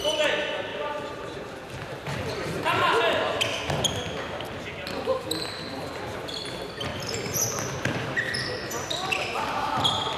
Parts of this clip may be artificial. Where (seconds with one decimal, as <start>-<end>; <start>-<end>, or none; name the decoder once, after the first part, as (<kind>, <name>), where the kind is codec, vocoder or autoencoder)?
0.7-2.6 (vocoder, BigVGAN v2); 6.9-7.7